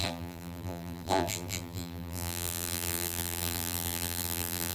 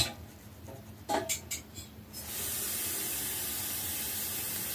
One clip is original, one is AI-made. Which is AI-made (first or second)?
first